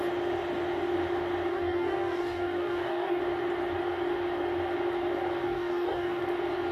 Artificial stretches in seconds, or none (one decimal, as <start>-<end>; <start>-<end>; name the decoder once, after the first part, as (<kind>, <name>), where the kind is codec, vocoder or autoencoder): 1.5-3.2 (codec, DAC); 5.4-6.2